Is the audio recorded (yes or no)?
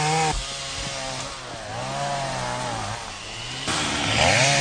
yes